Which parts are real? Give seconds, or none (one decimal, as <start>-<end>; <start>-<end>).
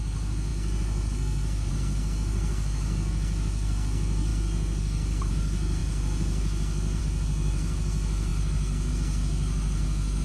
none